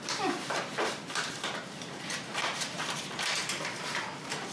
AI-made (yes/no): yes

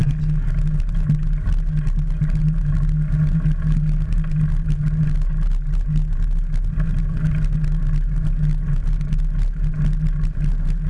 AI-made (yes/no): no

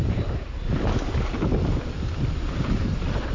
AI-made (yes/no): no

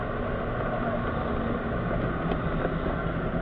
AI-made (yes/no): no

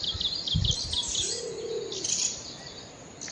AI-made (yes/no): no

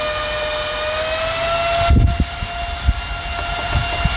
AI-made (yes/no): no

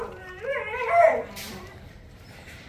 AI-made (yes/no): yes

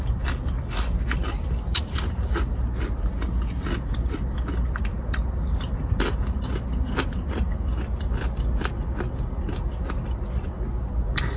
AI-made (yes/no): no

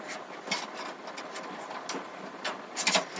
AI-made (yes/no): no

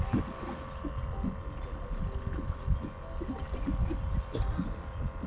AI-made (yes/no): no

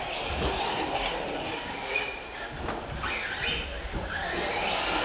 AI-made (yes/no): no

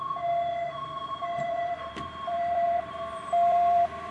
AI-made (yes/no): yes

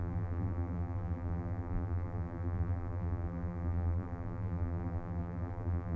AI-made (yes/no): yes